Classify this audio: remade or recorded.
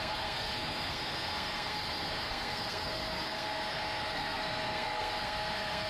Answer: remade